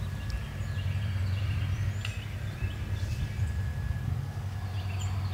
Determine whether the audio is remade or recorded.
remade